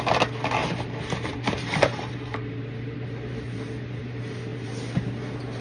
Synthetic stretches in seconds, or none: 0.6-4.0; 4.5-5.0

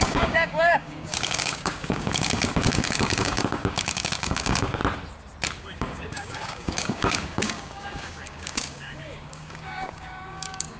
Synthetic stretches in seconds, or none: 0.0-4.8; 5.6-10.8

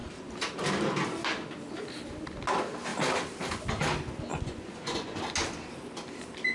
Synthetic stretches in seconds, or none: 4.3-5.2